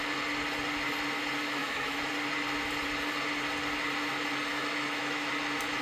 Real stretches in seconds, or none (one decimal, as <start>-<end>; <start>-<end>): 0.0-1.6; 2.1-4.5; 5.3-5.8